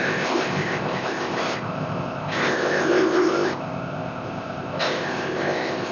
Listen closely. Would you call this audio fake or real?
fake